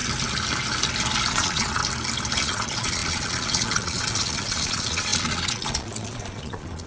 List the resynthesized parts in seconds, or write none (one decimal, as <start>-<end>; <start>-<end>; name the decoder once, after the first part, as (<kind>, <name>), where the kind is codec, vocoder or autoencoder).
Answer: 1.3-1.8 (vocoder, Vocos); 2.4-6.9